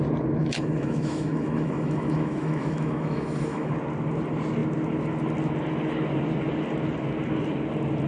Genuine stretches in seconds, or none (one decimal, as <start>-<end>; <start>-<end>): 0.0-0.4; 3.7-8.1